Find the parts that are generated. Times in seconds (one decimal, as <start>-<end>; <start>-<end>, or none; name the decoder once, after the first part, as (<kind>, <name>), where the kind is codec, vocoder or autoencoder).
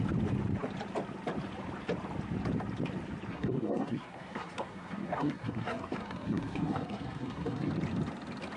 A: 3.3-7.7 (codec, SNAC)